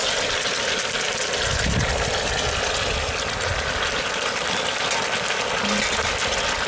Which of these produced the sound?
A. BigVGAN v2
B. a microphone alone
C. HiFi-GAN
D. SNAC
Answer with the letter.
B